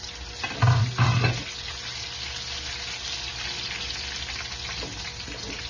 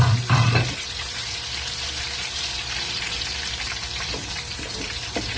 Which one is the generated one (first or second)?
second